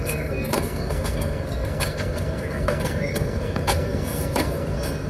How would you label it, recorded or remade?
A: remade